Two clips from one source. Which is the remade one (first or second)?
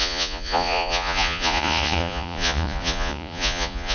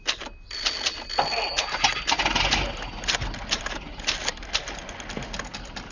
first